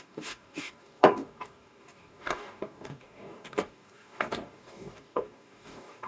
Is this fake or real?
fake